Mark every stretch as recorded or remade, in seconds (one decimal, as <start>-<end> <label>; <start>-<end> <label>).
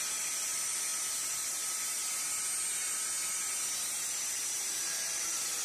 0.0-0.9 remade; 0.9-4.3 recorded; 4.3-5.6 remade